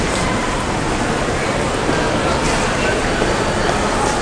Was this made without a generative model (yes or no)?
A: yes